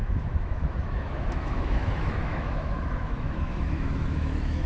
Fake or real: fake